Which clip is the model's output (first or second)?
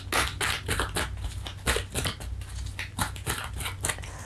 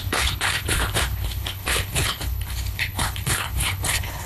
second